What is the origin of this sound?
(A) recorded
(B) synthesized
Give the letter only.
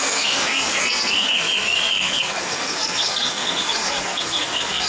B